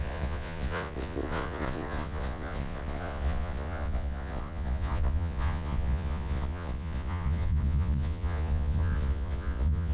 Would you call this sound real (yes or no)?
no